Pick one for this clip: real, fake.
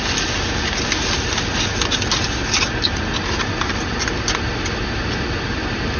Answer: real